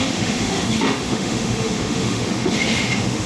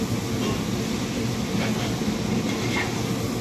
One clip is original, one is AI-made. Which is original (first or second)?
second